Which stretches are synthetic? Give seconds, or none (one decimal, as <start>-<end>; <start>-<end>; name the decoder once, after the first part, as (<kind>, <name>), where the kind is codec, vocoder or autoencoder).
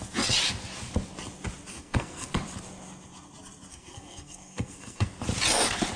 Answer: 1.7-2.3 (codec, SNAC); 3.7-5.1